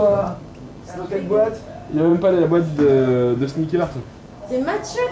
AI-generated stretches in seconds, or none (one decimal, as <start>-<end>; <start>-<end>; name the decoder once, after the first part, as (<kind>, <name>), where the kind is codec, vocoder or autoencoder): none